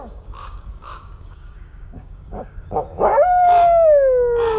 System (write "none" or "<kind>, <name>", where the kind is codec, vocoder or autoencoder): codec, DAC